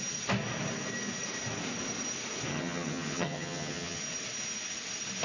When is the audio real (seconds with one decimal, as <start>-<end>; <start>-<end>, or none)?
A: 0.0-2.5; 4.0-5.2